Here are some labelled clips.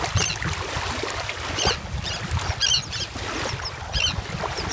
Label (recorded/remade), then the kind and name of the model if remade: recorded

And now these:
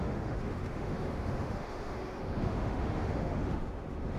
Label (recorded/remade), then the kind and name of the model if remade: remade, autoencoder, DAC-VAE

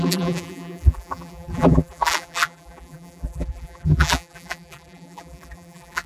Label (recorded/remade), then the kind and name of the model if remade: remade, vocoder, BigVGAN v2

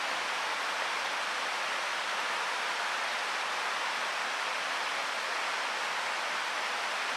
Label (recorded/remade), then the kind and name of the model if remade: recorded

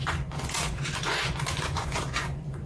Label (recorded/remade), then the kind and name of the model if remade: remade, vocoder, Vocos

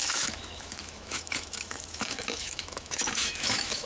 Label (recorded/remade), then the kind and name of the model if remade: remade, autoencoder, DAC-VAE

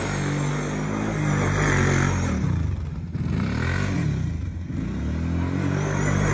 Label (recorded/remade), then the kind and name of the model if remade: recorded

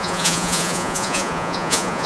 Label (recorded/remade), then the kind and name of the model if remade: remade, vocoder, Vocos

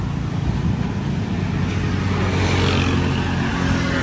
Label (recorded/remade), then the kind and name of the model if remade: recorded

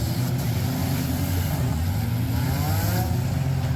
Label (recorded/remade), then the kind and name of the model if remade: recorded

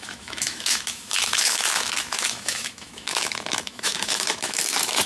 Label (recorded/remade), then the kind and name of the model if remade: remade, autoencoder, DAC-VAE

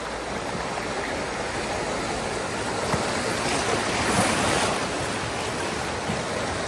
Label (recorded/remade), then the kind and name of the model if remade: recorded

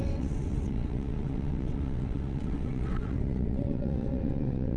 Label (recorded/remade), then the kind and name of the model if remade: remade, vocoder, WaveNeXt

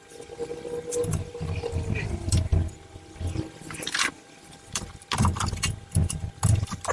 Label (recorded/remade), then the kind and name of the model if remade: recorded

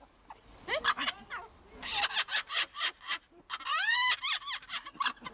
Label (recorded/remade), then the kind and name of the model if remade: recorded